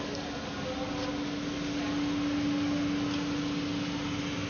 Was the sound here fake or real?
real